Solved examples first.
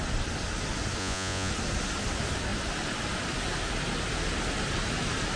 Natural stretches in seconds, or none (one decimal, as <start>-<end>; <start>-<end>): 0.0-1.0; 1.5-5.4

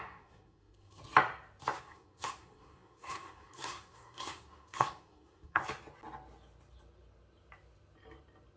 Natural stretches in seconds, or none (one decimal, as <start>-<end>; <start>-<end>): 1.0-1.8; 5.6-8.6

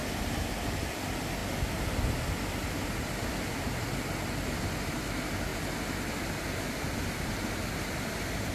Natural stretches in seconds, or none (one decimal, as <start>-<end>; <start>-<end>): 0.0-5.5

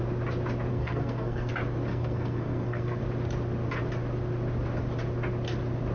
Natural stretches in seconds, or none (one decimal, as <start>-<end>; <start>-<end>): 0.0-0.7; 1.5-1.9; 3.0-5.9

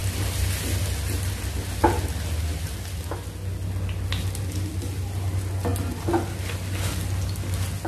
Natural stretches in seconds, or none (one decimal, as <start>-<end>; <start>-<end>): 0.0-7.9

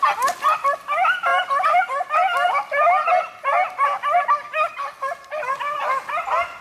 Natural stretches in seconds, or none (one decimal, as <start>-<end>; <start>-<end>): 0.0-6.6

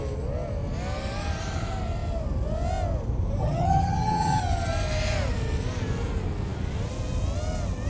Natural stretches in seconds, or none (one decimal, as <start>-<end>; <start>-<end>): 0.0-3.4; 4.4-7.9

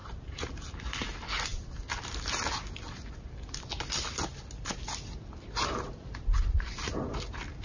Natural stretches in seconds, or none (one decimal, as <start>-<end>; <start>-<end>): 0.6-7.6